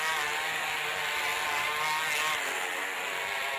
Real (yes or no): yes